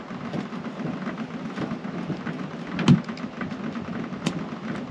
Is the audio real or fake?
real